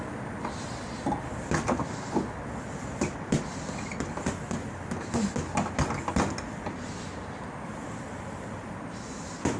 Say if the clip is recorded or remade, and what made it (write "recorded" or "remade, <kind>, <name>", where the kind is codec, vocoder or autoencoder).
recorded